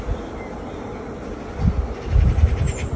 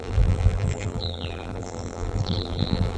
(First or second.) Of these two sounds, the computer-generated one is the second